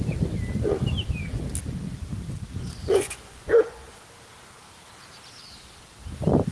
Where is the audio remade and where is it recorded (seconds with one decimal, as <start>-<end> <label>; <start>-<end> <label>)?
0.0-2.6 recorded; 2.6-4.0 remade; 4.0-6.5 recorded